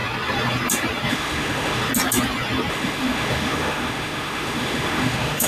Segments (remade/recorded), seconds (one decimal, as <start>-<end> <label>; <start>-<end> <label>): 0.0-1.1 recorded; 1.1-1.9 remade; 1.9-2.7 recorded; 2.7-5.5 remade

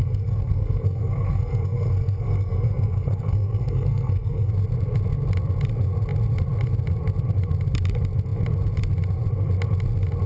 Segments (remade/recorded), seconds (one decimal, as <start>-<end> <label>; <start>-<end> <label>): 0.0-4.5 remade; 4.5-10.3 recorded

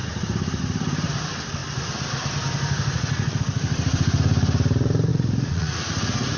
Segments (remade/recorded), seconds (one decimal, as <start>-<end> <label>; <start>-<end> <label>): 0.0-5.1 recorded; 5.1-5.9 remade; 5.9-6.4 recorded

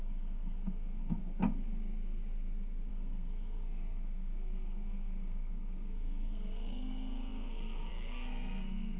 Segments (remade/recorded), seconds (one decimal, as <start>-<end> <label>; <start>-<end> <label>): 0.0-1.2 remade; 1.2-2.9 recorded; 2.9-9.0 remade